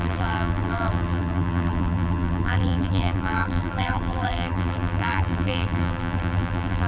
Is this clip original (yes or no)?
no